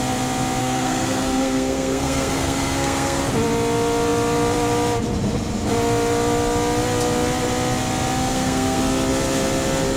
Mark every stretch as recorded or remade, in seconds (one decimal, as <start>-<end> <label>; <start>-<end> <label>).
0.0-0.6 recorded; 0.6-3.2 remade; 3.2-8.3 recorded; 8.3-8.8 remade; 8.8-10.0 recorded